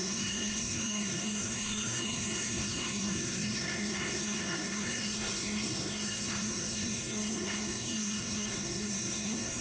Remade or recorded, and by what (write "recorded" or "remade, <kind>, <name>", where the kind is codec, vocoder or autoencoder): remade, codec, SNAC